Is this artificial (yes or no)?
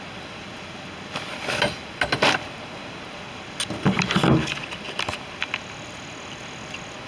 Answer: no